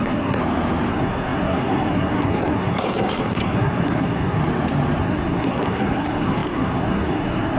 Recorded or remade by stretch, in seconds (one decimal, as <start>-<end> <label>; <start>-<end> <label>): 0.0-0.4 remade; 0.4-0.9 recorded; 0.9-4.4 remade; 4.4-5.0 recorded; 5.0-7.6 remade

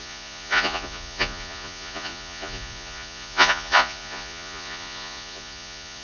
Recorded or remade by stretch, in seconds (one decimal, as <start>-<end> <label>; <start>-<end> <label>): 0.0-6.0 remade

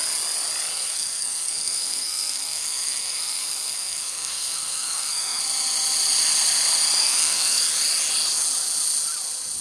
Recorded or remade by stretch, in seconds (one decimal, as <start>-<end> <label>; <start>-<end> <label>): 0.0-0.7 recorded; 0.7-5.4 remade; 5.4-7.0 recorded; 7.0-7.6 remade; 7.6-9.6 recorded

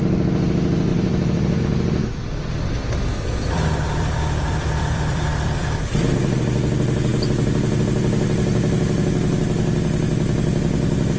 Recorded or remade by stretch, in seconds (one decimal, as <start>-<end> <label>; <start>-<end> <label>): 0.0-0.9 recorded; 0.9-1.6 remade; 1.6-2.8 recorded; 2.8-6.4 remade; 6.4-11.2 recorded

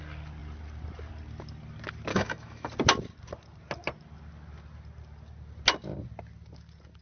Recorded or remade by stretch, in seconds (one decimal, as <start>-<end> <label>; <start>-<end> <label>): 0.0-2.1 recorded; 2.1-2.7 remade; 2.7-7.0 recorded